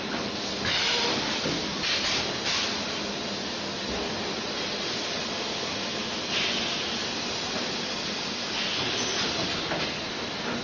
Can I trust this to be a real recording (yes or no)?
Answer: yes